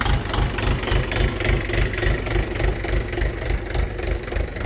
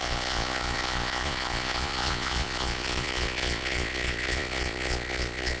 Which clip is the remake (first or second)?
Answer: second